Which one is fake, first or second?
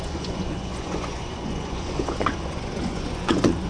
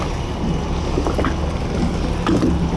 first